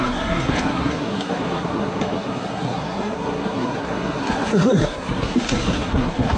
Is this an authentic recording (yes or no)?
no